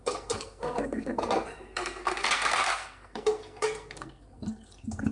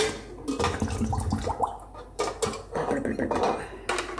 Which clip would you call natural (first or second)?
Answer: second